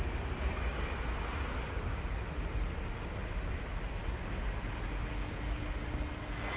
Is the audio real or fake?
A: real